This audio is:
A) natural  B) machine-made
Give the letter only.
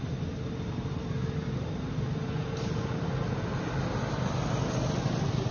A